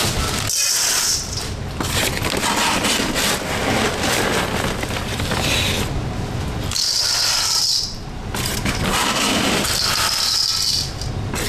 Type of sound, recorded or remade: recorded